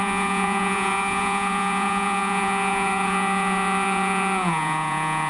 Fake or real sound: fake